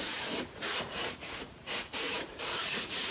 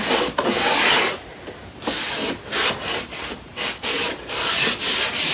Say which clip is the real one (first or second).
second